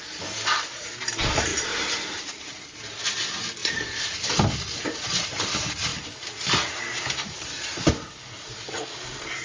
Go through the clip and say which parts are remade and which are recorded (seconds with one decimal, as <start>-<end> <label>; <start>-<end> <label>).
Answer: 0.0-9.4 recorded